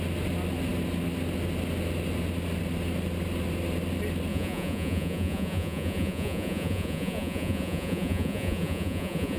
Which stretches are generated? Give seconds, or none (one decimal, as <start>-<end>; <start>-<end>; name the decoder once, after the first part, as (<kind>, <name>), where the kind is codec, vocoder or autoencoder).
4.3-9.4 (vocoder, Vocos)